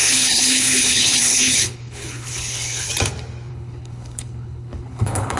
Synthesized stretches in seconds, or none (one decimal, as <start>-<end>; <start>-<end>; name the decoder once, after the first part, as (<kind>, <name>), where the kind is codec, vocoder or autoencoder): 0.0-2.9 (codec, HILCodec); 3.5-5.4